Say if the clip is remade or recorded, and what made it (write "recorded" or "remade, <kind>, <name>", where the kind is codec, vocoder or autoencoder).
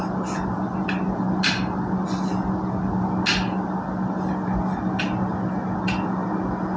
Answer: recorded